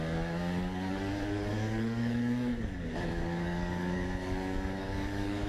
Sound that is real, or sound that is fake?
fake